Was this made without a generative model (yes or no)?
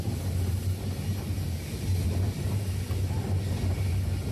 yes